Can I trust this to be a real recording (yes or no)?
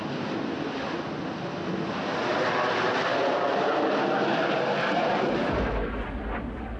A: yes